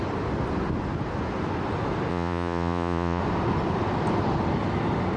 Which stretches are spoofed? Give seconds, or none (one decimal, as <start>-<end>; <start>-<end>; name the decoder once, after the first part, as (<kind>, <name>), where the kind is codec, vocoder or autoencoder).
2.1-3.2 (vocoder, Vocos)